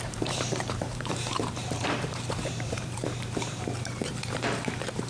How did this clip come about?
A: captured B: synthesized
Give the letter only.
B